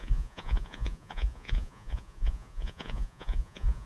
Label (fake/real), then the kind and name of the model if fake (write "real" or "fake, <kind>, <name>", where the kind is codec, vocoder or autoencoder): fake, vocoder, Vocos